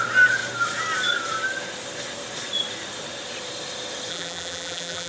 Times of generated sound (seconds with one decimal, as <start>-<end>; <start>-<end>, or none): 4.1-5.1

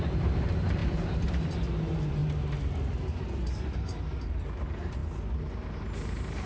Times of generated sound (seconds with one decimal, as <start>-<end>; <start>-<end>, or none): 0.0-2.2; 2.9-5.0; 5.8-6.5

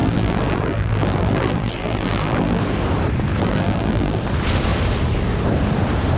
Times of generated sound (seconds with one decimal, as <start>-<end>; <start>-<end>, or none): 0.0-2.6; 3.4-4.2